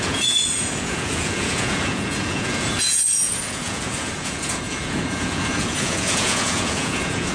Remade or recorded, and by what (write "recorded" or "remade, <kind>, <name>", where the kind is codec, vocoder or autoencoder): remade, vocoder, Vocos